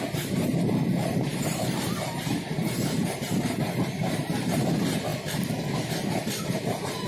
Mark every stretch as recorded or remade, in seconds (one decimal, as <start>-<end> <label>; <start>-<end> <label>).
0.0-5.1 remade; 5.1-5.9 recorded; 5.9-7.1 remade

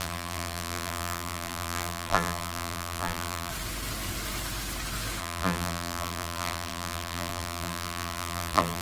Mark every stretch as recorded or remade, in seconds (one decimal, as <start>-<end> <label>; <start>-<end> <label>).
0.0-3.5 remade; 3.5-5.2 recorded; 5.2-8.8 remade

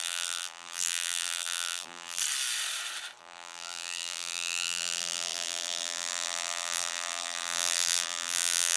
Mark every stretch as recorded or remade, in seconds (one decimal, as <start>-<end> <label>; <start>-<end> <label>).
0.0-2.2 remade; 2.2-3.2 recorded; 3.2-8.8 remade

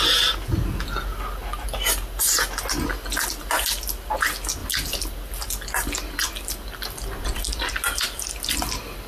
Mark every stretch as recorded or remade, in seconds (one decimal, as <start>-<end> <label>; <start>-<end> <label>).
0.0-9.1 recorded

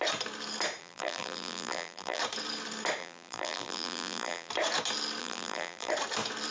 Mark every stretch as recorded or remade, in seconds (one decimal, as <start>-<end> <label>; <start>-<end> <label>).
0.0-0.8 recorded; 0.8-2.2 remade; 2.2-3.0 recorded; 3.0-4.5 remade; 4.5-5.2 recorded; 5.2-5.9 remade; 5.9-6.5 recorded

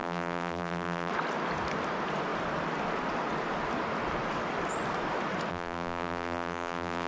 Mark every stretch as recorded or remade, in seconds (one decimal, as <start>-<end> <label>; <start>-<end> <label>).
0.0-1.1 remade; 1.1-5.5 recorded; 5.5-7.1 remade

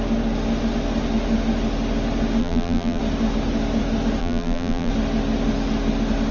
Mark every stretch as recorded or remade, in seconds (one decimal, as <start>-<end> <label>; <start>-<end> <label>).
0.0-2.4 recorded; 2.4-3.0 remade; 3.0-4.2 recorded; 4.2-4.9 remade; 4.9-6.3 recorded